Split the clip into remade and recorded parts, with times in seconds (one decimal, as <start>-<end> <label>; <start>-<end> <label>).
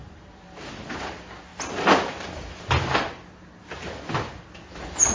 0.0-5.1 recorded